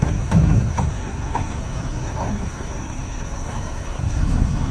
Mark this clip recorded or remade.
remade